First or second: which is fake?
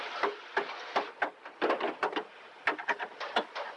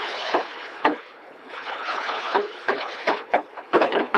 second